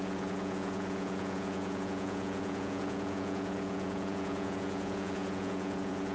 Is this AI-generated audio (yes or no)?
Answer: yes